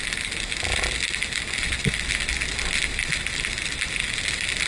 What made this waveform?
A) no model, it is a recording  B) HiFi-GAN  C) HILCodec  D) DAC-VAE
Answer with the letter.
A